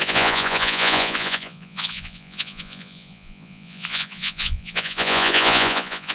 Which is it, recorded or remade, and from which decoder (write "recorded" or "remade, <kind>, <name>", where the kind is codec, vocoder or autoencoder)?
remade, vocoder, Vocos